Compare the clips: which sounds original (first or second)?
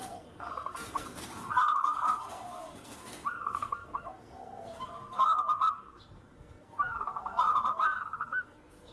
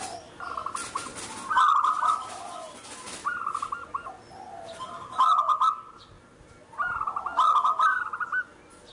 second